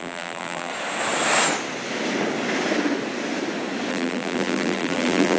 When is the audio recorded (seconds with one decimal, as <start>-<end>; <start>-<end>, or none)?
0.7-3.9